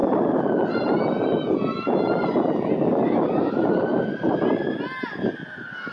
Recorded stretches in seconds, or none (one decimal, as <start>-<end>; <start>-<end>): 0.0-5.9